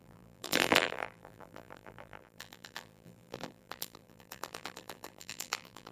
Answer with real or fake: fake